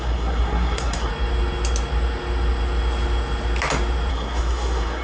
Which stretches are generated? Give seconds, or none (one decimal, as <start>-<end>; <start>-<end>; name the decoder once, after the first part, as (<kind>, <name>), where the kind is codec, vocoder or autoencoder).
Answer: 0.0-1.1 (codec, SNAC); 4.1-5.0